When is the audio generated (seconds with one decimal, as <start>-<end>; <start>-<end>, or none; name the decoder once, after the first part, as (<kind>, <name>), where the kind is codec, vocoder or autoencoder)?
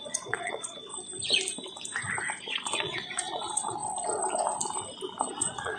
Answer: 0.0-0.9 (vocoder, Vocos); 2.4-3.8; 5.3-5.8